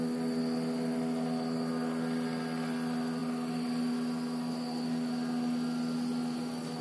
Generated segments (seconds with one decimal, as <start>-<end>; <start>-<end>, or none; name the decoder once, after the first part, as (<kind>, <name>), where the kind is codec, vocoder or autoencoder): none